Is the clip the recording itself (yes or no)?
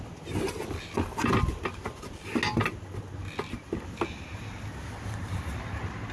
yes